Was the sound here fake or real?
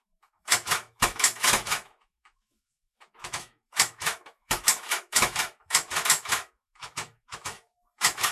fake